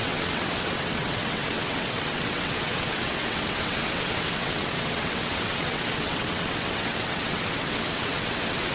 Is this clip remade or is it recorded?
remade